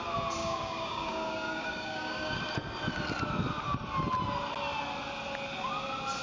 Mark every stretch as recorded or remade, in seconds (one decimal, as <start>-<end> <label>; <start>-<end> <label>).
0.0-0.4 recorded; 0.4-2.4 remade; 2.4-6.2 recorded